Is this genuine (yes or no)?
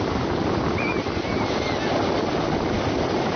yes